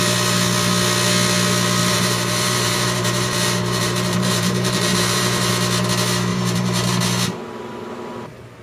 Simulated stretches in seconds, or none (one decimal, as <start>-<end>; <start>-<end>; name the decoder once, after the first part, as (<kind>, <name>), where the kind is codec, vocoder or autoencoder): 1.8-5.5 (vocoder, BigVGAN v2); 6.3-7.0